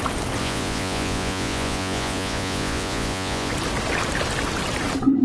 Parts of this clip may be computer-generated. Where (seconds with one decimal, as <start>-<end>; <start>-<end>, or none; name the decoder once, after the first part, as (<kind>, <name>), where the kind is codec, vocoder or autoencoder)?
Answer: 0.4-3.5 (vocoder, Vocos)